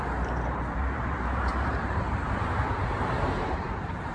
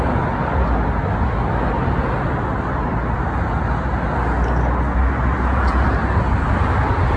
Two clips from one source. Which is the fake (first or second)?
first